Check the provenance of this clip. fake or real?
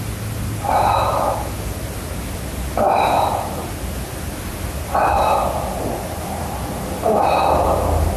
real